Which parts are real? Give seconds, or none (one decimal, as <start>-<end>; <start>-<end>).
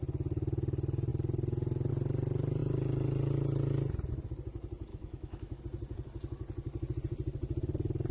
0.0-4.9; 5.6-8.1